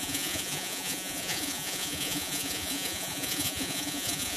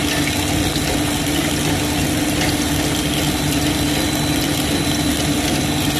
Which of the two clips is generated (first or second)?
first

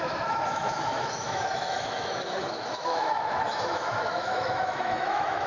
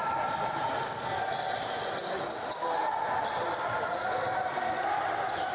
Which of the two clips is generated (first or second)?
first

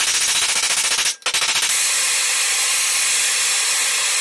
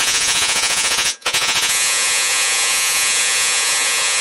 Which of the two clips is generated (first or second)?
second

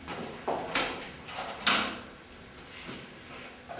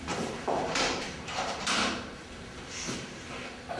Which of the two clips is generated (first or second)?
second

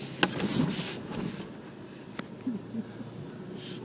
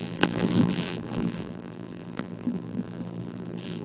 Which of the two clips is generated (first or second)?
second